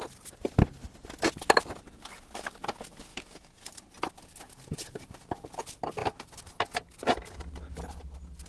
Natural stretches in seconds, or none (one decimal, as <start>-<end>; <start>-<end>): 0.0-3.1; 3.7-8.5